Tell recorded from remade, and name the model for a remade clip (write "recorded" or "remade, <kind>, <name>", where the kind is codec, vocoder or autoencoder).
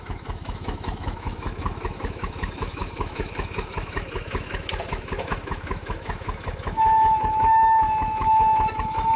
remade, autoencoder, DAC-VAE